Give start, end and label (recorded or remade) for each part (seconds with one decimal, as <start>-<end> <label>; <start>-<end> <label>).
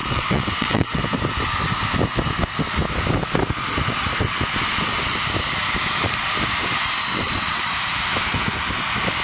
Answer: 0.0-1.0 remade; 1.0-7.1 recorded; 7.1-7.6 remade; 7.6-9.2 recorded